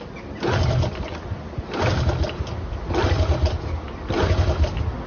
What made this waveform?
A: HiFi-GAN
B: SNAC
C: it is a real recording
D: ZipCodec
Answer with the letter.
C